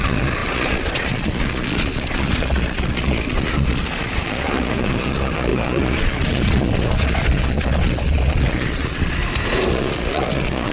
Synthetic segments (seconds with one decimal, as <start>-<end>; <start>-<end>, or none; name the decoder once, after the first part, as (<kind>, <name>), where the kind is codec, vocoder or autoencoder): 0.0-9.2 (vocoder, Vocos); 9.7-10.7